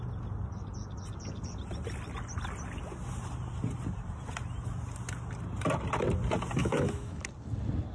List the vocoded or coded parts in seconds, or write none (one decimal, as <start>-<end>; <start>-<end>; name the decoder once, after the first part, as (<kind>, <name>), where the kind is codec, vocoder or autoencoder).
6.6-7.2 (autoencoder, DAC-VAE)